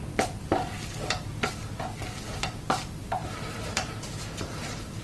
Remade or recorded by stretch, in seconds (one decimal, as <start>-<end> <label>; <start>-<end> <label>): 0.0-3.2 recorded; 3.2-5.0 remade